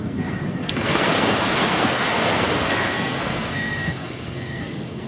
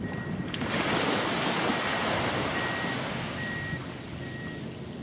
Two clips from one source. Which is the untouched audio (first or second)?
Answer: second